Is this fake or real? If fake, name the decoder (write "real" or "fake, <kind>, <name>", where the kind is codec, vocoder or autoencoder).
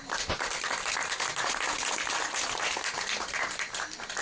real